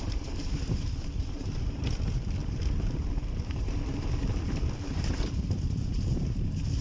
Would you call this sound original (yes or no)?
no